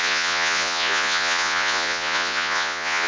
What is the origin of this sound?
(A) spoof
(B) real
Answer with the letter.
A